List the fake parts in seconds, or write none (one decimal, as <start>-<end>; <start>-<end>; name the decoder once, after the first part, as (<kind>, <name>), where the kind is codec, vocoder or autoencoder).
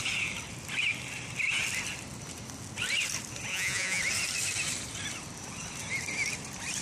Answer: 3.5-4.0 (vocoder, Vocos)